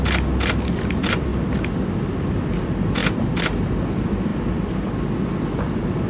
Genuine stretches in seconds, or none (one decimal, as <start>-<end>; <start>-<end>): 0.0-6.1